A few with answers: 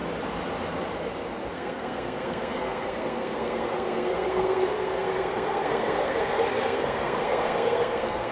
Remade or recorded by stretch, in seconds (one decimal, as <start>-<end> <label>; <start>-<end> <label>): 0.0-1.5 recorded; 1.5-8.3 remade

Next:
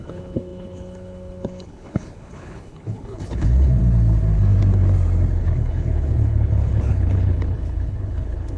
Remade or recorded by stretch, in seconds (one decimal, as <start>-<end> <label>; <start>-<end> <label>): 0.0-3.8 remade; 3.8-5.4 recorded; 5.4-8.6 remade

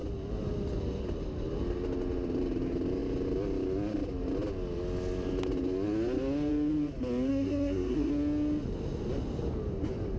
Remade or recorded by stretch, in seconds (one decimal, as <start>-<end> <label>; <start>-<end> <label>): 0.0-7.3 recorded; 7.3-8.1 remade; 8.1-10.2 recorded

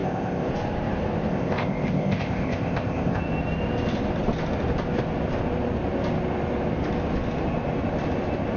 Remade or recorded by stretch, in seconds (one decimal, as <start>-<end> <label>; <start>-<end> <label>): 0.0-0.5 remade; 0.5-1.3 recorded; 1.3-3.2 remade; 3.2-8.6 recorded

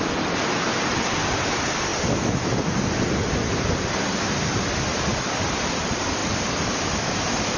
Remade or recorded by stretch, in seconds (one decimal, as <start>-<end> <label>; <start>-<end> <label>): 0.0-5.1 recorded; 5.1-5.7 remade; 5.7-7.6 recorded

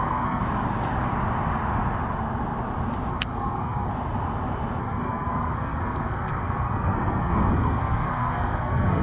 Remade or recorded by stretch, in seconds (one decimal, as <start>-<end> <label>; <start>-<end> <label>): 0.0-0.4 remade; 0.4-3.1 recorded; 3.1-3.9 remade; 3.9-4.8 recorded; 4.8-9.0 remade

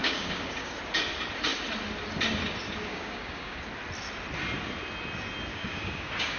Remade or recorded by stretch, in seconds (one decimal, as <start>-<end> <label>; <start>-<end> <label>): 0.0-0.8 remade; 0.8-2.9 recorded; 2.9-3.7 remade; 3.7-5.5 recorded; 5.5-6.4 remade

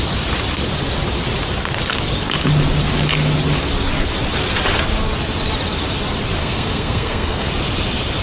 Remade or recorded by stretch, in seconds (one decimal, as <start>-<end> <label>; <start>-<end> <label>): 0.0-6.4 recorded; 6.4-7.5 remade; 7.5-8.2 recorded